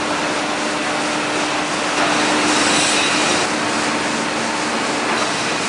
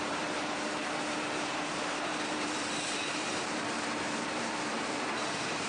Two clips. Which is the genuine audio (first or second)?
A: first